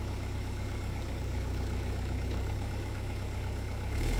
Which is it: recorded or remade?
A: remade